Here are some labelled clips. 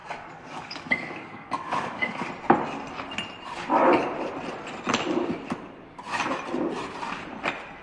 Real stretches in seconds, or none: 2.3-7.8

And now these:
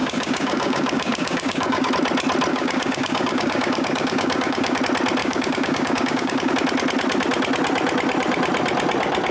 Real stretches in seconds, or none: 1.9-2.5; 4.8-5.2; 6.5-9.3

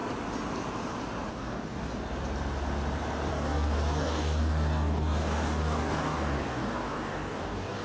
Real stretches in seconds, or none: 0.0-1.3; 1.9-3.3